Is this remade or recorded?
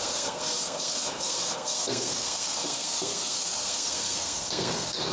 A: remade